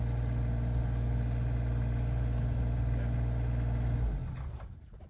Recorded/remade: recorded